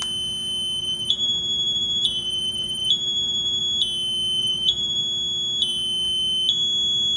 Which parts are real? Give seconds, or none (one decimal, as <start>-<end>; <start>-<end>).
0.0-0.8; 3.6-4.4; 5.0-7.2